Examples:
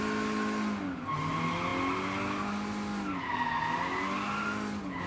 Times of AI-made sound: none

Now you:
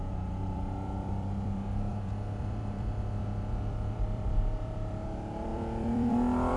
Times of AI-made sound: 0.0-6.6 (vocoder, BigVGAN v2)

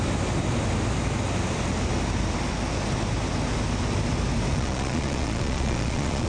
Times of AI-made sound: 4.5-6.3 (vocoder, Vocos)

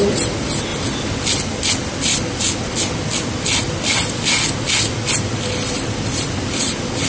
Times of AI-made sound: none

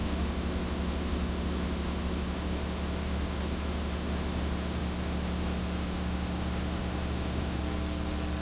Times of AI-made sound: 0.0-7.6 (autoencoder, DAC-VAE)

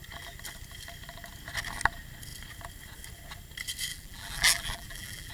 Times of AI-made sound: 3.9-5.3 (vocoder, BigVGAN v2)

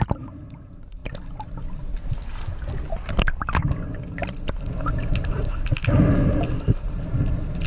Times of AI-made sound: none

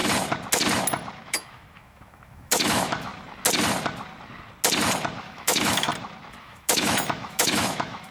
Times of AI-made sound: 1.3-3.1 (autoencoder, DAC-VAE); 5.2-5.9; 6.4-8.1